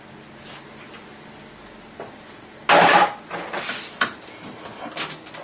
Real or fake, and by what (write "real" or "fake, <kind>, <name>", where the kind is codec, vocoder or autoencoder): real